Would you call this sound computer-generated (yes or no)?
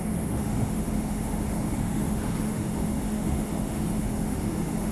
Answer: yes